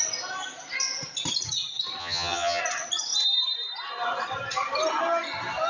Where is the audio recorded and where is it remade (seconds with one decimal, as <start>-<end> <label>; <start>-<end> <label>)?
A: 0.0-2.0 recorded; 2.0-2.6 remade; 2.6-5.7 recorded